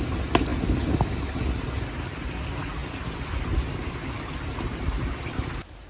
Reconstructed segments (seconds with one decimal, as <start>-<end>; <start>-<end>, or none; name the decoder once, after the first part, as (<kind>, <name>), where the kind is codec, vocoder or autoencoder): none